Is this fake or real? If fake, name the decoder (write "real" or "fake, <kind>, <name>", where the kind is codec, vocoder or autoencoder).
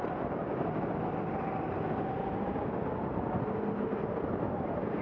real